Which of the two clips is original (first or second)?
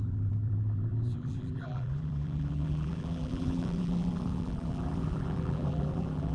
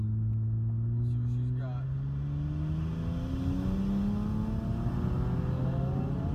second